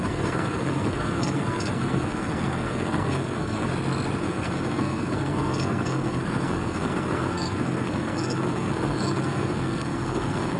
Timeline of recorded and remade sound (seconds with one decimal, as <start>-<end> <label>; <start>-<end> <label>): 0.0-3.7 remade; 3.7-4.2 recorded; 4.2-10.6 remade